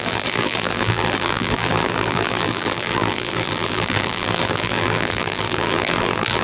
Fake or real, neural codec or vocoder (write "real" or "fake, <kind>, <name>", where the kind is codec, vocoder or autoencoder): fake, vocoder, BigVGAN v2